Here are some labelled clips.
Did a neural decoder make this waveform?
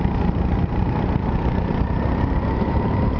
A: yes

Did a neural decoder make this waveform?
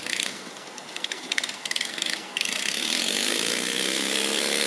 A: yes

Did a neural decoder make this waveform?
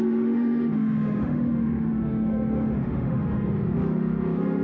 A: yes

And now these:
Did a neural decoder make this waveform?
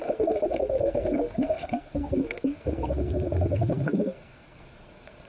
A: yes